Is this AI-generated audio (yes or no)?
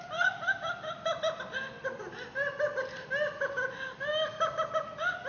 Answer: no